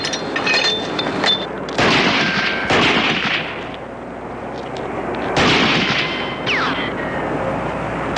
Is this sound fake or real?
real